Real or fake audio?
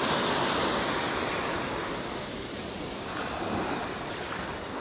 real